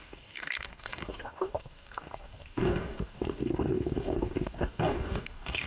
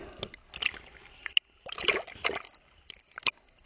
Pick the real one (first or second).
second